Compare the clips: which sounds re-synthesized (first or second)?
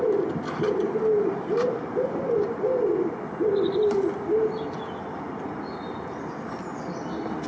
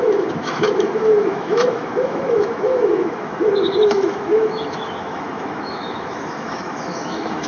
second